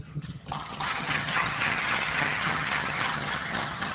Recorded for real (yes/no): no